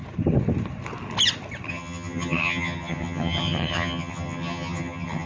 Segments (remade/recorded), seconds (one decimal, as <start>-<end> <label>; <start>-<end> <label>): 0.0-1.7 recorded; 1.7-5.3 remade